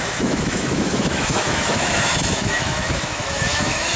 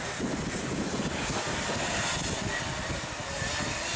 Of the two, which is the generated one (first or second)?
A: first